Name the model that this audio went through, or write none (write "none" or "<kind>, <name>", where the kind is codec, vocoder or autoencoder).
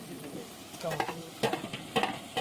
none